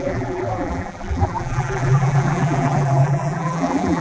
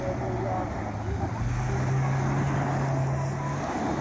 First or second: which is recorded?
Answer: second